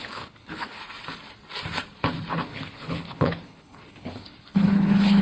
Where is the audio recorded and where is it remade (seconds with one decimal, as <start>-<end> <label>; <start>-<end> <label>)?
0.0-0.8 remade; 0.8-2.3 recorded; 2.3-5.2 remade